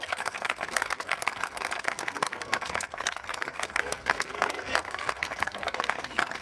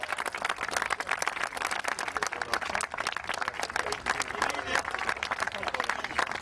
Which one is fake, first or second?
first